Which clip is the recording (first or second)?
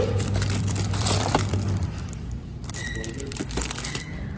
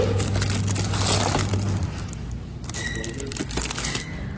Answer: second